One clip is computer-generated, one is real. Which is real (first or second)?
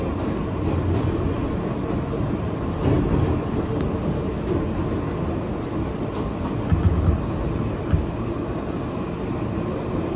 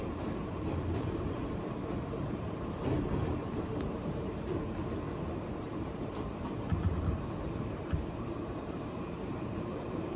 first